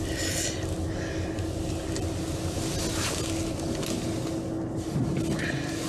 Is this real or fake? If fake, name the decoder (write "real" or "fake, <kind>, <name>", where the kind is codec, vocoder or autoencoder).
real